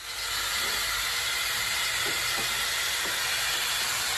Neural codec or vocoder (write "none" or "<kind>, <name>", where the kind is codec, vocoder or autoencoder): none